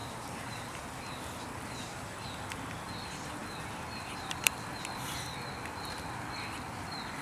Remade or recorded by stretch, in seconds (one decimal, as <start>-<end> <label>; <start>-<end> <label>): 0.0-0.8 remade; 0.8-7.2 recorded